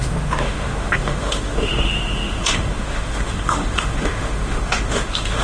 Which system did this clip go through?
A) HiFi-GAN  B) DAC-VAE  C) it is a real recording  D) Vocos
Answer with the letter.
B